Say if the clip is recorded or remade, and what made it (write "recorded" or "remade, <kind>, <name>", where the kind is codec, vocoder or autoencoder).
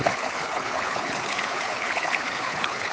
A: remade, codec, HILCodec